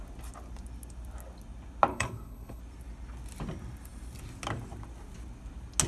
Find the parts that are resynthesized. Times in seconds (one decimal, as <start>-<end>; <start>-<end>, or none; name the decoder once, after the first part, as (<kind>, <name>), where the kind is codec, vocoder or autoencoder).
1.9-2.6 (codec, HILCodec)